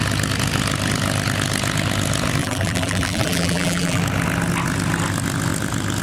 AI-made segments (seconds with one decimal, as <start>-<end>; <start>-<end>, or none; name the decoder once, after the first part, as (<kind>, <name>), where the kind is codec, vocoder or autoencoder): 2.4-4.0 (vocoder, BigVGAN v2)